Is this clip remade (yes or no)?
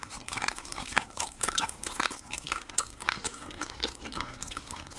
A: yes